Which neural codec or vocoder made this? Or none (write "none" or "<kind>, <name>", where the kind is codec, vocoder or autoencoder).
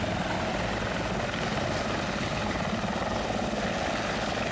none